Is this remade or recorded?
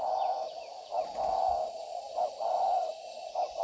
recorded